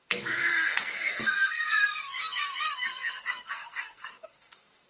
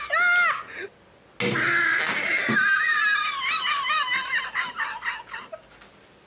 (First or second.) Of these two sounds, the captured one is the second